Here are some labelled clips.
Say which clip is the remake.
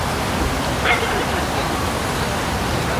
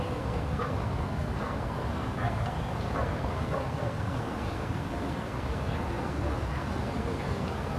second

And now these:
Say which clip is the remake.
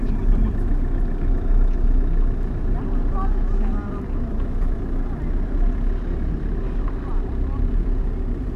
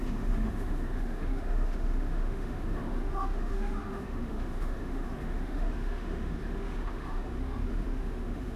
second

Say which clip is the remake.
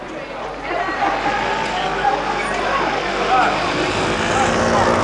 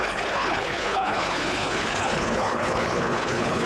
second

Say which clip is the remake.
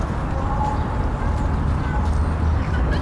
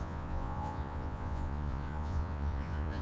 second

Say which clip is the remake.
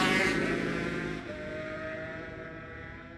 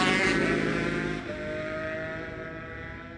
first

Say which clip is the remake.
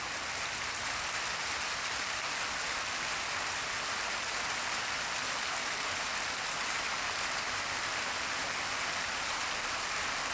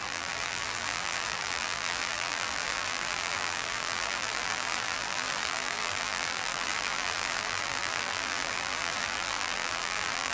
second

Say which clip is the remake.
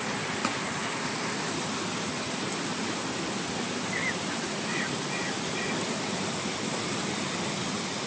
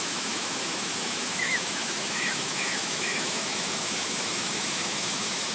second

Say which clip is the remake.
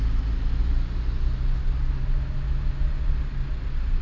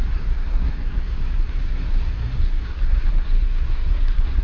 second